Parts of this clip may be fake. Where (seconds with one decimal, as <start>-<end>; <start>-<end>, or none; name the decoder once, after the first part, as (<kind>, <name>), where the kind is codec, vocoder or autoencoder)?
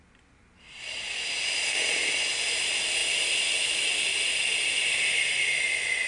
none